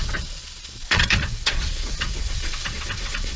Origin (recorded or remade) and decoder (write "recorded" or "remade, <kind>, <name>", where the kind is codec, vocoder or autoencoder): remade, vocoder, Vocos